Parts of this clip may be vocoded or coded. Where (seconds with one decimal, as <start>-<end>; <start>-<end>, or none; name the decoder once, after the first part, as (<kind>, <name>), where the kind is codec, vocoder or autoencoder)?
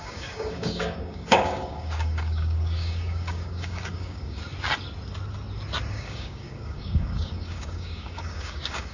0.0-4.4 (codec, DAC); 5.9-8.9